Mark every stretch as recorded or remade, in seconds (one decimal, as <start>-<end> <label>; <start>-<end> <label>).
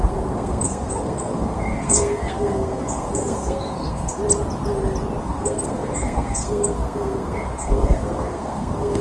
0.0-4.2 remade; 4.2-5.2 recorded; 5.2-9.0 remade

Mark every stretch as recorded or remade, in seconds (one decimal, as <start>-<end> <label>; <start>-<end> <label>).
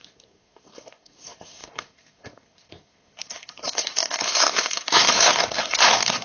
0.0-6.2 remade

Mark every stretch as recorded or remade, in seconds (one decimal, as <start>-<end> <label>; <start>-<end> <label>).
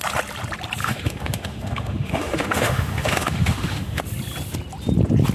0.0-0.8 recorded; 0.8-4.0 remade; 4.0-5.3 recorded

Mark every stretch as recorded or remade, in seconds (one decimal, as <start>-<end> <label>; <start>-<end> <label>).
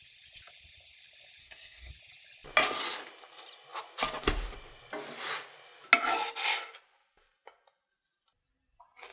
0.0-1.4 recorded; 1.4-1.9 remade; 1.9-9.1 recorded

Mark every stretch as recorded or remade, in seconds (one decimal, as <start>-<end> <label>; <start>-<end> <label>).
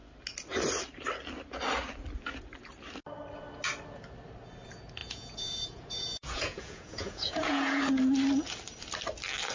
0.0-5.0 recorded; 5.0-7.8 remade; 7.8-9.5 recorded